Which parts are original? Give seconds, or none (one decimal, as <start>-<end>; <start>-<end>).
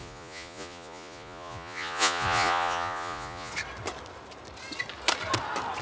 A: 3.5-5.8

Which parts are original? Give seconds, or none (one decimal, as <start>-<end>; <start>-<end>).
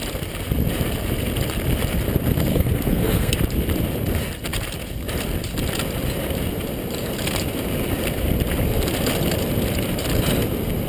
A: 0.0-2.5; 3.3-10.9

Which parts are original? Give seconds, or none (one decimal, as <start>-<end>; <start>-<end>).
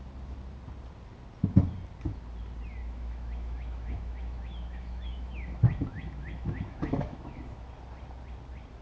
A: 0.0-2.8; 7.7-8.8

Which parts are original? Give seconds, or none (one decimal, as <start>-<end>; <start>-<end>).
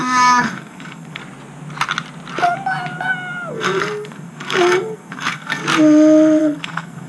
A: 1.2-3.5; 5.6-6.4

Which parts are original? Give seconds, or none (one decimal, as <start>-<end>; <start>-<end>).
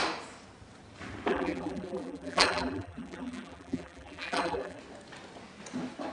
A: 0.0-1.3; 4.8-6.1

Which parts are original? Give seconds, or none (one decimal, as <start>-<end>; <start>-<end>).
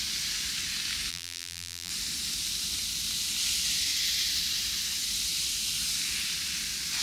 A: 0.0-1.1; 1.9-7.0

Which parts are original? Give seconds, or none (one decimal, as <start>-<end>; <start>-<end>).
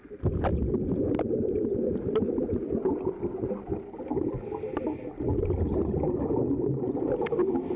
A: 0.0-7.8